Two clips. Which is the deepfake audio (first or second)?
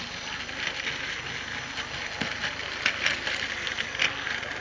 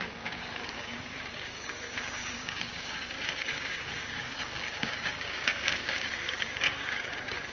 second